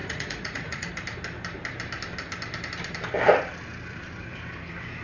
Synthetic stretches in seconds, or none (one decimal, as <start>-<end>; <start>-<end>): 0.0-0.9